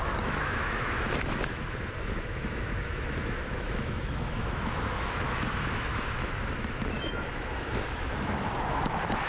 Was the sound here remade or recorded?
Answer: remade